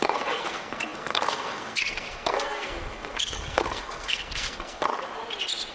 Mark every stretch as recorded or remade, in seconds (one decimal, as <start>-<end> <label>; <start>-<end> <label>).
0.0-4.9 remade; 4.9-5.7 recorded